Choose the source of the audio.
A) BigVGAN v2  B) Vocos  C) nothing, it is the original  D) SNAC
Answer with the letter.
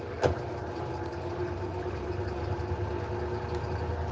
C